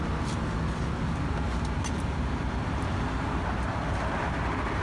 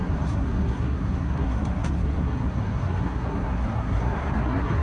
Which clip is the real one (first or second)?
first